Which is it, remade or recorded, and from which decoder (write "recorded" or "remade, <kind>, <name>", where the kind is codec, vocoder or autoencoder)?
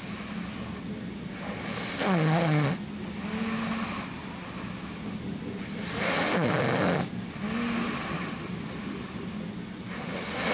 recorded